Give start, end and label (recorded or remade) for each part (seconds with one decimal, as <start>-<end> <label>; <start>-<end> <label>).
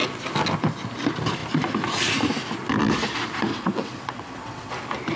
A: 0.0-3.5 recorded; 3.5-4.7 remade; 4.7-5.2 recorded